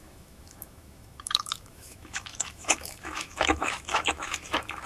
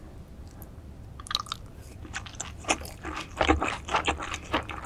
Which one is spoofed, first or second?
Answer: first